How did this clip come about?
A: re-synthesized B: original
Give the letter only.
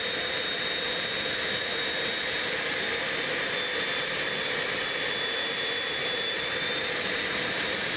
B